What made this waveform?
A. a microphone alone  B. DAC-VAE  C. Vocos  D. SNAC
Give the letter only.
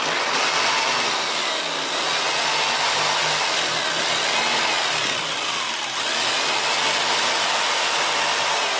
A